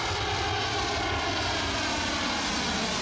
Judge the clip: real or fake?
real